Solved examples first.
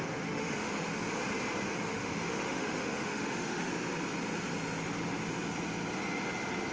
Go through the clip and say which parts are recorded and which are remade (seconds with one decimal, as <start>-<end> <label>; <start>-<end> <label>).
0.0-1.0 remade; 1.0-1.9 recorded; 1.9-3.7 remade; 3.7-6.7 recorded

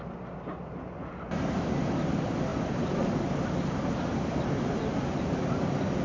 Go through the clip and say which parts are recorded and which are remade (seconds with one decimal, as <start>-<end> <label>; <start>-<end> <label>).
0.0-6.0 recorded

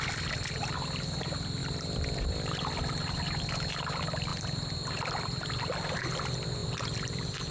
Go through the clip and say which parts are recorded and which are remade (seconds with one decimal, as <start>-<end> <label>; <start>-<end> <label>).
0.0-1.6 recorded; 1.6-3.4 remade; 3.4-4.3 recorded; 4.3-6.0 remade; 6.0-7.5 recorded